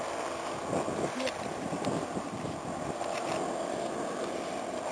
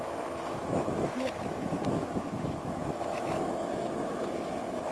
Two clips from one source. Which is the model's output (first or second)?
second